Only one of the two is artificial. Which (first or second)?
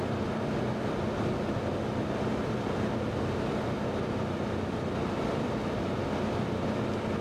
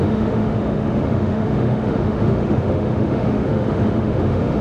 second